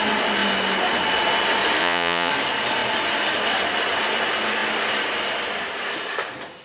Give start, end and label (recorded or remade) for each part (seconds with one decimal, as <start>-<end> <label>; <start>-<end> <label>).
0.0-1.8 recorded; 1.8-2.3 remade; 2.3-6.6 recorded